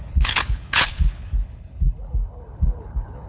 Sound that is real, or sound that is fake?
fake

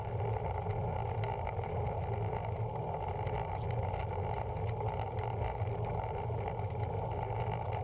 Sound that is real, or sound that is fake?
real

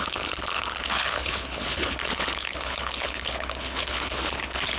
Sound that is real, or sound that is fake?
fake